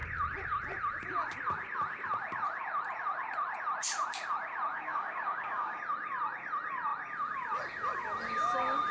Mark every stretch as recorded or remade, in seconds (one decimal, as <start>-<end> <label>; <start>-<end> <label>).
0.0-4.7 recorded; 4.7-5.8 remade; 5.8-8.9 recorded